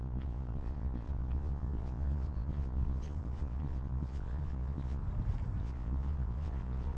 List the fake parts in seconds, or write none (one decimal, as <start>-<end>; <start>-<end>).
0.0-5.0; 5.6-7.0